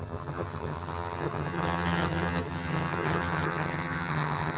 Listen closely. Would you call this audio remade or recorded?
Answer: remade